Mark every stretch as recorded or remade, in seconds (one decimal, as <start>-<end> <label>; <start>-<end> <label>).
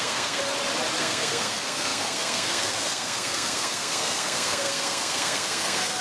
0.0-0.4 remade; 0.4-1.0 recorded; 1.0-6.0 remade